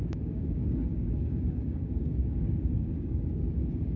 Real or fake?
fake